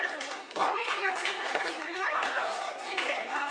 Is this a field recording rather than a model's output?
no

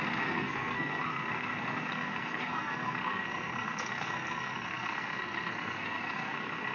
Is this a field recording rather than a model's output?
no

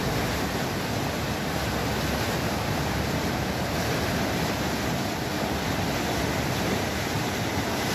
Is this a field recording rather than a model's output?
yes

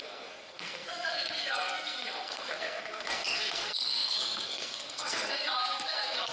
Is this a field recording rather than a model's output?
no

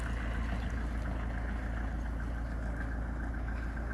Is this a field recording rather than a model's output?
yes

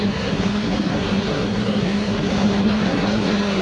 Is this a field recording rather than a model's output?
no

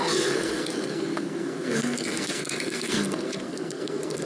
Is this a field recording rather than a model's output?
no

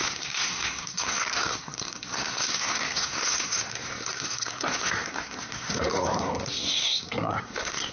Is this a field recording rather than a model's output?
no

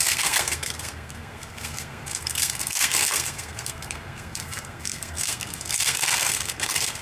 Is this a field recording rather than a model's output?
no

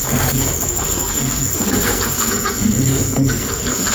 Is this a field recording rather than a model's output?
no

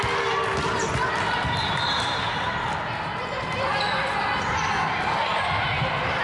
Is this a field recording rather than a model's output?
yes